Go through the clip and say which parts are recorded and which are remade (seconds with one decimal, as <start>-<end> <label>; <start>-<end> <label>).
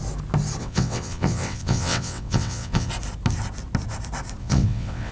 0.0-0.6 recorded; 0.6-2.9 remade; 2.9-4.4 recorded; 4.4-5.1 remade